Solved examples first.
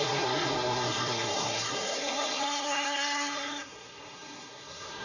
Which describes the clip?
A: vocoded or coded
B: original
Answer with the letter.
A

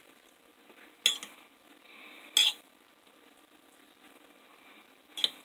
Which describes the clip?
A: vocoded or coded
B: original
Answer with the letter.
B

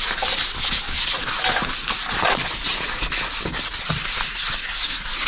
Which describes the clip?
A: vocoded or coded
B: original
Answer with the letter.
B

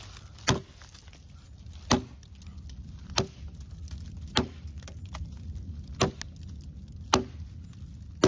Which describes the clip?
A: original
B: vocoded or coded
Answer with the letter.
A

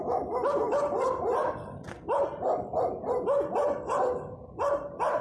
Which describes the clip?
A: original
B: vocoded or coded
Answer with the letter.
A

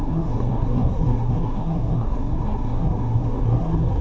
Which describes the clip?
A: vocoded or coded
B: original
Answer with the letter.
A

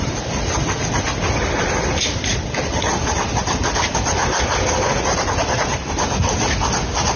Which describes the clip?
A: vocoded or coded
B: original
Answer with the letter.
B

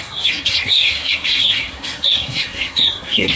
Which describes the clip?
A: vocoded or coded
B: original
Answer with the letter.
A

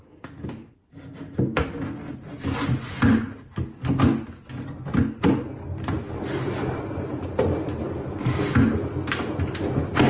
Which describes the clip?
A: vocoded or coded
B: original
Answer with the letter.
B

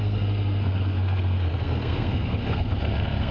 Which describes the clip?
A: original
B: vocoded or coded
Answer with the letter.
B